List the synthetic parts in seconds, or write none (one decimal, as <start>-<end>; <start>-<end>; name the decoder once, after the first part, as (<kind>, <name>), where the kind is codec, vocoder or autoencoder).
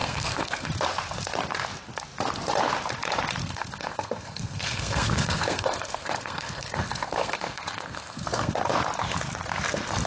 0.0-0.7 (codec, SNAC); 3.4-8.5